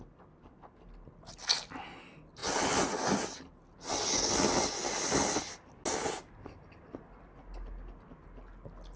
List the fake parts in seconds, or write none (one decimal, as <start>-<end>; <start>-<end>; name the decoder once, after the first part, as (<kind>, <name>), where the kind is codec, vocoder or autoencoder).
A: none